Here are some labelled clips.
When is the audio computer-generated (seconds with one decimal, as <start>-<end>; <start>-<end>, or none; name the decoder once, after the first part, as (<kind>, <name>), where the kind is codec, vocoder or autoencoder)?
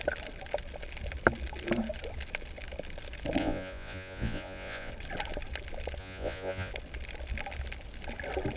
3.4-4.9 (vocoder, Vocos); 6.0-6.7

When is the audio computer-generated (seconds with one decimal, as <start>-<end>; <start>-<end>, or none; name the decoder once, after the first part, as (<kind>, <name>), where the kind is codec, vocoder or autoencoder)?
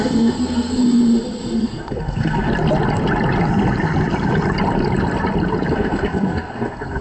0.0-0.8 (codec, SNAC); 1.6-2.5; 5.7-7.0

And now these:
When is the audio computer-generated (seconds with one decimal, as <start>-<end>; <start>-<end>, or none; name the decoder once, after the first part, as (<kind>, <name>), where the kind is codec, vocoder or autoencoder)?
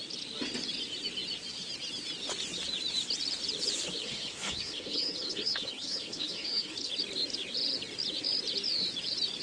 4.0-6.9 (codec, HILCodec)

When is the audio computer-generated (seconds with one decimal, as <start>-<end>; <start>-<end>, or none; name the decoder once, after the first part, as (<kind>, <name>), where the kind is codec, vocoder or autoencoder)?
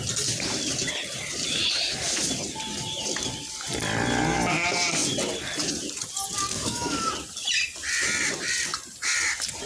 6.5-7.1 (codec, DAC)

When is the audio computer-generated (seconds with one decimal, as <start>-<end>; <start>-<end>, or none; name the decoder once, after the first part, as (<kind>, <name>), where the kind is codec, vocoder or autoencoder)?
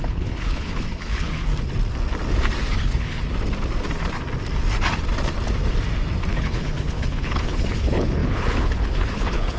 0.0-1.5 (codec, HILCodec); 2.7-3.2; 6.3-9.6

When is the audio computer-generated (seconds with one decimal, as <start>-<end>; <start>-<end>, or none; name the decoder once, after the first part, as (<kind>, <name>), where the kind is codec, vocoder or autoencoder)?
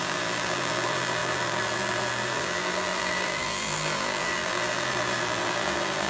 0.0-6.1 (vocoder, BigVGAN v2)